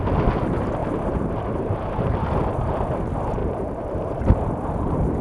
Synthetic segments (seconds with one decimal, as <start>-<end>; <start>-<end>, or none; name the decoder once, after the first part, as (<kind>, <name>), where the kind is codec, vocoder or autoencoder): 0.8-2.0 (vocoder, BigVGAN v2); 3.4-4.2